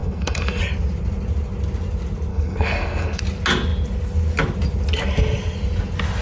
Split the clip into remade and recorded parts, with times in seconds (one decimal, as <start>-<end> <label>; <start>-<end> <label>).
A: 0.0-0.6 remade; 0.6-2.3 recorded; 2.3-3.2 remade; 3.2-6.2 recorded